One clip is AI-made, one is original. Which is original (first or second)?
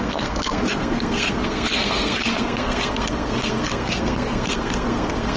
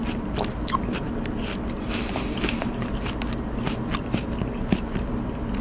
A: second